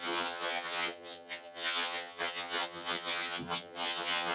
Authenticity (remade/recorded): remade